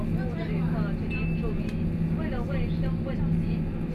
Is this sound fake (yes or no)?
no